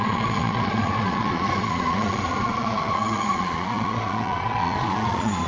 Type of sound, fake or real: fake